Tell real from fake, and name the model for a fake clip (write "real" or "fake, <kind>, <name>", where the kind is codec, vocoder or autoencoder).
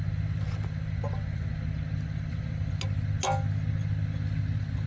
real